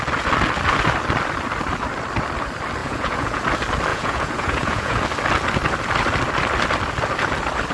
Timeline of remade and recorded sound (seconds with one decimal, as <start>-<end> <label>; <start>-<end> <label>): 0.0-2.8 recorded; 2.8-3.4 remade; 3.4-3.9 recorded; 3.9-5.0 remade; 5.0-7.7 recorded